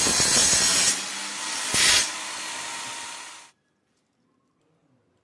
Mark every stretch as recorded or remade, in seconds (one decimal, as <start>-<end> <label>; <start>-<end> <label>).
0.0-5.2 recorded